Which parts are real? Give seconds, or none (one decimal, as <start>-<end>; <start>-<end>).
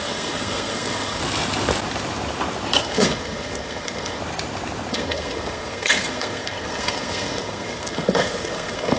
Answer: 1.2-2.8; 4.2-4.9